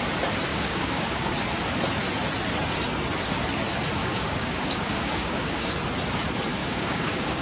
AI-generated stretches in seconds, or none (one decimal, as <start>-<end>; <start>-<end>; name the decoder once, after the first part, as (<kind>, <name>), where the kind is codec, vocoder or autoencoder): 0.5-1.3 (codec, DAC); 4.0-5.7; 6.6-7.4